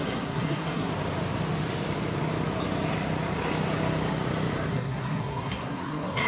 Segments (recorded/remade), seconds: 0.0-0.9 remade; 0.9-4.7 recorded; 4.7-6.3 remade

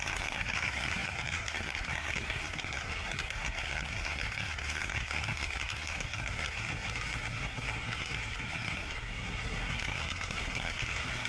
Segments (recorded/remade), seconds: 0.0-11.3 remade

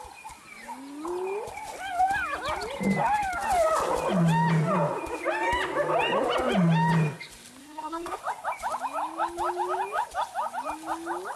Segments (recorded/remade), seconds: 0.0-7.6 recorded; 7.6-8.2 remade; 8.2-11.4 recorded

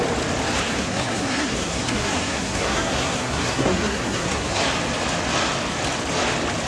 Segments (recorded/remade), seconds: 0.0-0.7 recorded; 0.7-4.6 remade; 4.6-6.7 recorded